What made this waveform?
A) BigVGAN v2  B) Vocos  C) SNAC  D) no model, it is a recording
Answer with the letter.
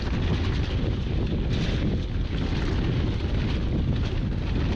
D